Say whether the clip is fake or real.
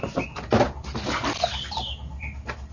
real